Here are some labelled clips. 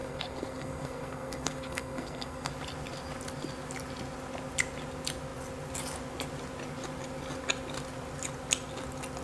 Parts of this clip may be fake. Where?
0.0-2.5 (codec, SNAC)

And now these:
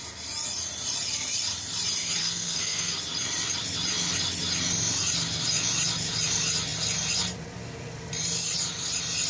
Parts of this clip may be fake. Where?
2.2-3.0 (codec, SNAC)

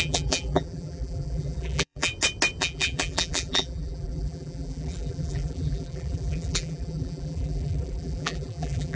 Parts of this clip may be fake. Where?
0.0-2.1 (vocoder, BigVGAN v2); 2.6-9.0

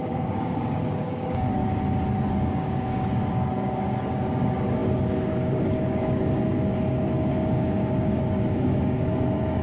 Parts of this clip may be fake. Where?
0.0-1.6 (codec, DAC); 2.3-9.6

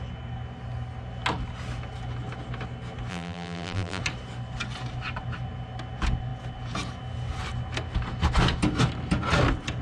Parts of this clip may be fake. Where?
3.1-4.0 (vocoder, BigVGAN v2)

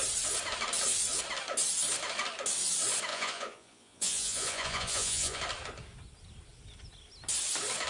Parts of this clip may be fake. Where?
3.1-5.4 (vocoder, Vocos)

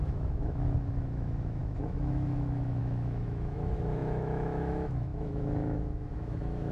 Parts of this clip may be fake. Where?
0.0-6.7 (autoencoder, DAC-VAE)

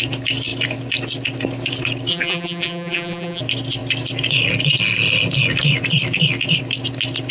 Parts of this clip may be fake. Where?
2.1-3.4 (vocoder, BigVGAN v2)